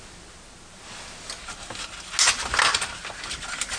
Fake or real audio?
real